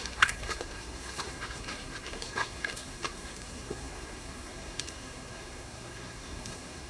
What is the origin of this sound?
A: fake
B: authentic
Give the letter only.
A